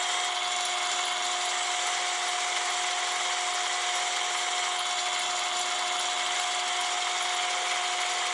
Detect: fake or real real